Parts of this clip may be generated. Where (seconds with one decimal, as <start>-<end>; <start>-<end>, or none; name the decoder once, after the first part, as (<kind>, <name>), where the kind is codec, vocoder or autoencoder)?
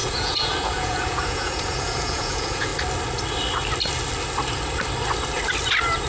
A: 0.0-2.7 (vocoder, Vocos)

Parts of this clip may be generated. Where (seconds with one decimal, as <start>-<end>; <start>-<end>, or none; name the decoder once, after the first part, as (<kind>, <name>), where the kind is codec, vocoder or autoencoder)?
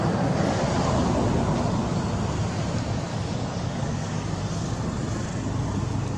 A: 3.1-4.4 (codec, DAC)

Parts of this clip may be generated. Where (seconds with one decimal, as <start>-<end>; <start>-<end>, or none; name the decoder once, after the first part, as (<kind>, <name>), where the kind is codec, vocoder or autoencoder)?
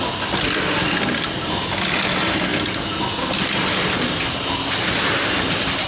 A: none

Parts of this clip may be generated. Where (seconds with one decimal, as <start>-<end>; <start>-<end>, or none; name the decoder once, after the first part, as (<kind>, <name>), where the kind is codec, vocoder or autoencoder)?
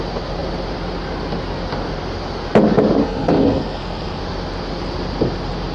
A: 3.0-4.2 (codec, SNAC)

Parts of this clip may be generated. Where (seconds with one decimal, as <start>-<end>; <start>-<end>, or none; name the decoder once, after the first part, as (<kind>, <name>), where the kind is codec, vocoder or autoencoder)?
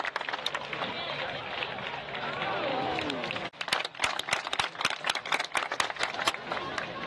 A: 2.7-3.4 (autoencoder, DAC-VAE)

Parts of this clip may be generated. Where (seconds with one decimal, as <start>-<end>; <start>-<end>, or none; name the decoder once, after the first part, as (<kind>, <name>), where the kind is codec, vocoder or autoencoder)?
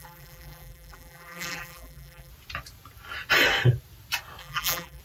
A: 0.0-2.3 (vocoder, BigVGAN v2); 4.4-5.0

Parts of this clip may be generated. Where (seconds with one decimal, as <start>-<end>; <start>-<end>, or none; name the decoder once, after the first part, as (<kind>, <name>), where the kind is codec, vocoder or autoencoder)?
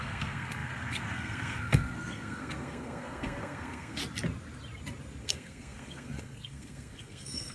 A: 0.0-4.0 (codec, SNAC); 5.2-7.5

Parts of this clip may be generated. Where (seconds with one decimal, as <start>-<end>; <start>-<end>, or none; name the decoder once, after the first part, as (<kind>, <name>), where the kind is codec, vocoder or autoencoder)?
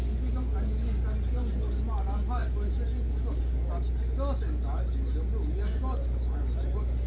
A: 0.0-2.4 (vocoder, BigVGAN v2); 3.4-5.8